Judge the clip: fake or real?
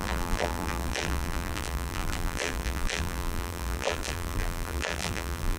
fake